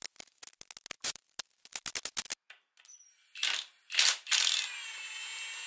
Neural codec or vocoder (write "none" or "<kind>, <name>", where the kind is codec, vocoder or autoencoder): none